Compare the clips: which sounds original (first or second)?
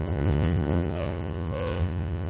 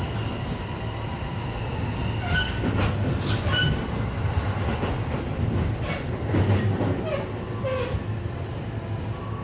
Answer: second